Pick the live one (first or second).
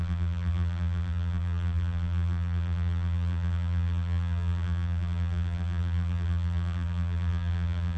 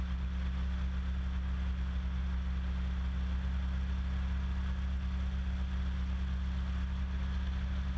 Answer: second